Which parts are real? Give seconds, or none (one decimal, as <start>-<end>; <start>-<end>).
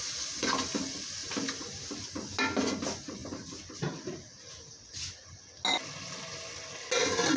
0.0-1.2; 2.1-7.4